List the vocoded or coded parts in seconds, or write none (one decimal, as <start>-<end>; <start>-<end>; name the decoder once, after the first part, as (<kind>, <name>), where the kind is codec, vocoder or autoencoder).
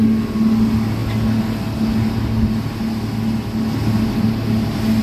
none